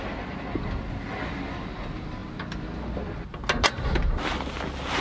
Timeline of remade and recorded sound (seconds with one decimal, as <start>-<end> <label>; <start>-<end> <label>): 0.0-5.0 recorded